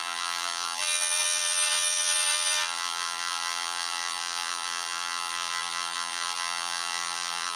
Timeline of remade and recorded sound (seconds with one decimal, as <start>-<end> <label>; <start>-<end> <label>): 0.0-7.6 remade